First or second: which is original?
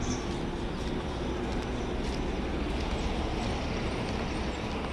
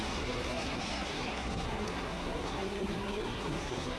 first